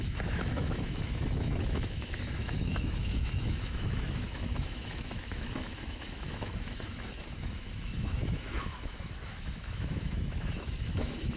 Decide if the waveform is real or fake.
fake